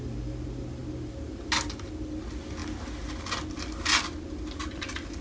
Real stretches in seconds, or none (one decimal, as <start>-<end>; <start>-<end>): 0.0-5.2